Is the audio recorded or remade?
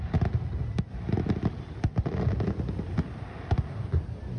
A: recorded